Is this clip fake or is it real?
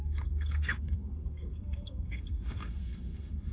fake